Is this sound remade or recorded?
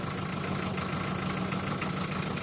recorded